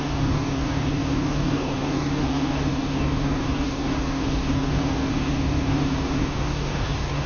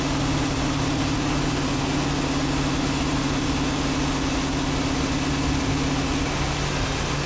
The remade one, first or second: first